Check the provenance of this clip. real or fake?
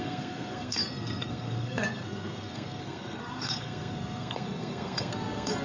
fake